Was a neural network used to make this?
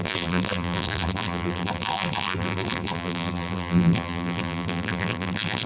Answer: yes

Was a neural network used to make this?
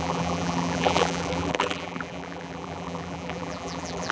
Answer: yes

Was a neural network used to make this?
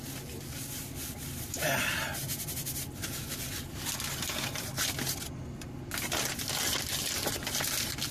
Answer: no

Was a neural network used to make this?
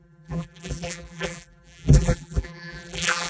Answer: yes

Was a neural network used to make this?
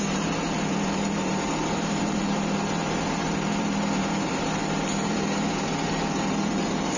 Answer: yes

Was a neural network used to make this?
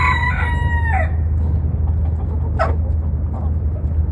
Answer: no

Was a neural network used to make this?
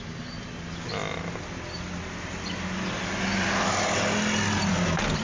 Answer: no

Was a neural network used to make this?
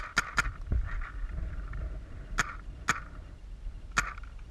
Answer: no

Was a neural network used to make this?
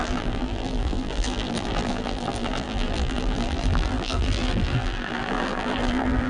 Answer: yes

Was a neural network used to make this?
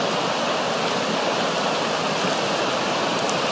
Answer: no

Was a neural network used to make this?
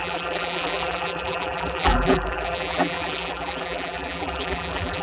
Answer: yes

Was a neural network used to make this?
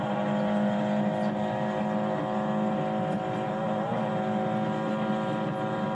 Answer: no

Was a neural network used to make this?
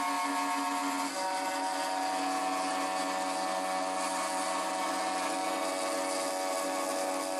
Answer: no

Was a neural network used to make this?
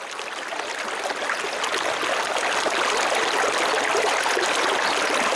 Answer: no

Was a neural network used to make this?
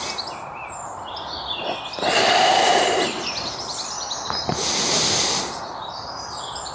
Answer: yes